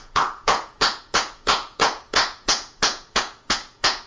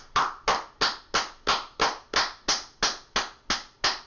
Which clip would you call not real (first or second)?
first